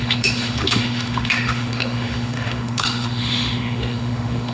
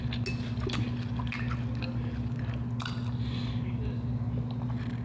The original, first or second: second